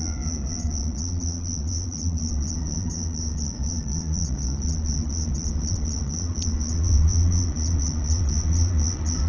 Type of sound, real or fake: fake